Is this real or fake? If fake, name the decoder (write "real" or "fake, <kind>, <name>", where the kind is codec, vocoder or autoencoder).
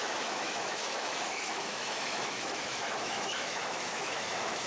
fake, autoencoder, DAC-VAE